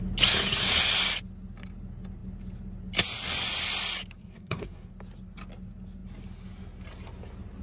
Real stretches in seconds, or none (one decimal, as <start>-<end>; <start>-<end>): 0.0-4.2; 4.9-7.6